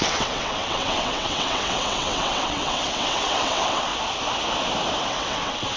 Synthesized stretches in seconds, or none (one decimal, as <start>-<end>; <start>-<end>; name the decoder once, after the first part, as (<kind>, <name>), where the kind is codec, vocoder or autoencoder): 0.0-3.9 (vocoder, WaveNeXt); 5.0-5.8